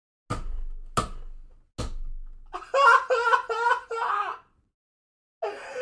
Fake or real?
real